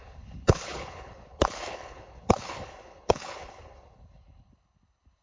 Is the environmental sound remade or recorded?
remade